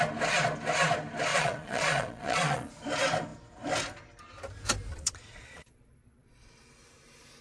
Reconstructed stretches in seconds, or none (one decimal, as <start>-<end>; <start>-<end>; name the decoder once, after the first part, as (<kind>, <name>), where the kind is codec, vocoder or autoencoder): 1.3-2.7 (vocoder, Vocos); 4.9-6.6